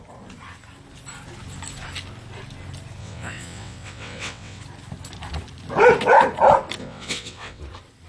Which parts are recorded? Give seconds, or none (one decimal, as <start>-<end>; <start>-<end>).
0.0-3.0; 4.6-6.8; 7.6-8.1